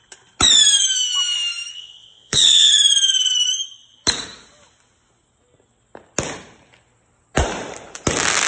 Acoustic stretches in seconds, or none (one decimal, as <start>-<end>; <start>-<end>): 0.0-1.7; 2.7-8.5